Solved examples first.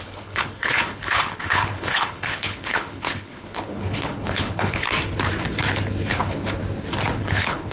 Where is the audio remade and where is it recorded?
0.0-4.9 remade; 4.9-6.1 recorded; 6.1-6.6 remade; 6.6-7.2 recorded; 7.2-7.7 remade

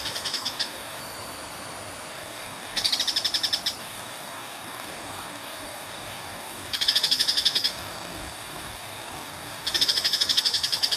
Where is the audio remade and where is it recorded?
0.0-1.0 remade; 1.0-2.1 recorded; 2.1-2.9 remade; 2.9-3.8 recorded; 3.8-11.0 remade

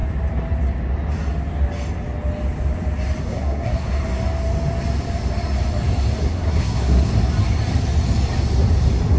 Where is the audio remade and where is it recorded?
0.0-3.2 recorded; 3.2-4.0 remade; 4.0-6.2 recorded; 6.2-7.1 remade; 7.1-9.2 recorded

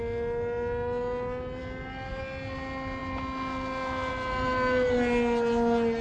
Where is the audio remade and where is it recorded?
0.0-6.0 recorded